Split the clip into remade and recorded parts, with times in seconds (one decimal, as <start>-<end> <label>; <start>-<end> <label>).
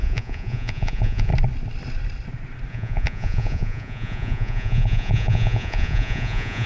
0.0-1.3 remade; 1.3-2.7 recorded; 2.7-6.7 remade